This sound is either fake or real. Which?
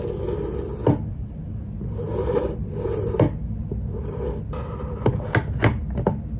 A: real